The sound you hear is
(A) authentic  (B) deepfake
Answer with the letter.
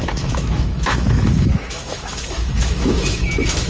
B